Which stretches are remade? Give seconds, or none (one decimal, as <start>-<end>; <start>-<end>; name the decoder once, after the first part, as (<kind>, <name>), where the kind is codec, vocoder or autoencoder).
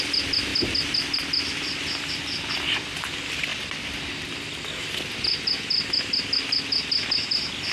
3.5-4.6 (vocoder, BigVGAN v2)